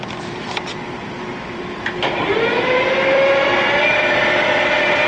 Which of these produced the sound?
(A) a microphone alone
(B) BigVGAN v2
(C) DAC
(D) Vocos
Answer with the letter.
B